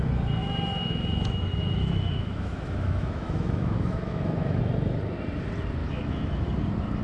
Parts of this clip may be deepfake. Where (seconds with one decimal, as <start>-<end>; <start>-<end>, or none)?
0.4-4.6; 5.8-6.5